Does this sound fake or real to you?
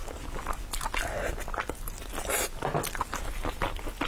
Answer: real